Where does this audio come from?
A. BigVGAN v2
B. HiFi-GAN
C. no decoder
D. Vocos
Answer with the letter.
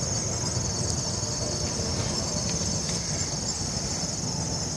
C